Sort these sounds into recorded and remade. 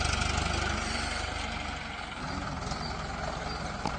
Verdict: recorded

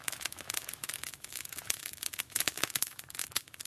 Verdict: remade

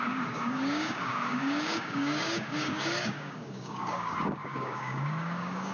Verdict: remade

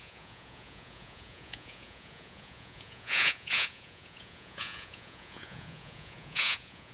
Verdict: remade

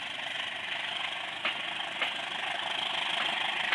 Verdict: recorded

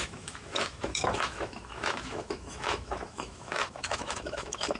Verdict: remade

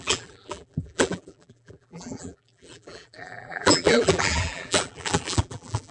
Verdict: remade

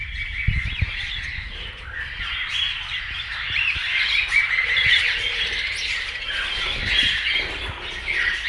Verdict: recorded